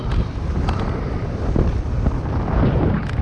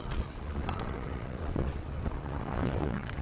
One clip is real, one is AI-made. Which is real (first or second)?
first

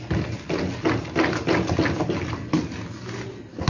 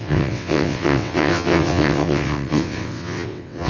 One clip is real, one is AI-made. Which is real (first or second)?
first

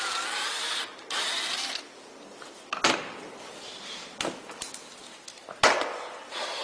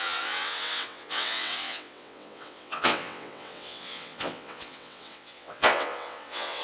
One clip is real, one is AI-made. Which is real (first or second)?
first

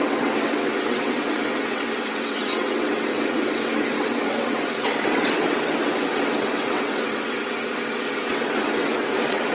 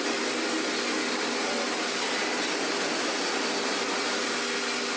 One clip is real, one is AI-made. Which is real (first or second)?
second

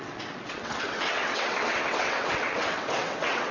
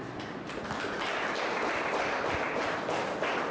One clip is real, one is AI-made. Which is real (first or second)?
second